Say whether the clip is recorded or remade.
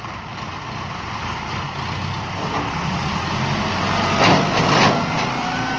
recorded